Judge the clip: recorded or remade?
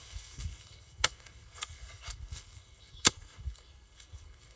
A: remade